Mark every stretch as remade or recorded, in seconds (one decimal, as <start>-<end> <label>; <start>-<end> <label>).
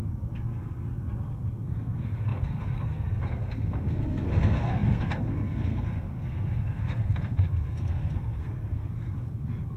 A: 0.0-9.8 remade